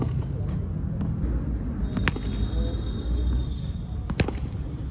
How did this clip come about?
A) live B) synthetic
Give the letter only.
A